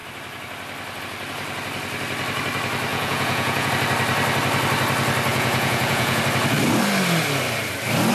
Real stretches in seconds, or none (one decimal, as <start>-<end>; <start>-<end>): 0.0-2.9; 3.7-5.3; 6.2-8.1